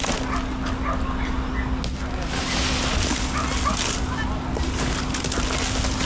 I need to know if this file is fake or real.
real